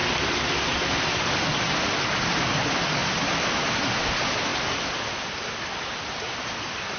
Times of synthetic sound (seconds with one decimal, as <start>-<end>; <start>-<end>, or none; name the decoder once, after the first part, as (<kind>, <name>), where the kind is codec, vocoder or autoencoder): none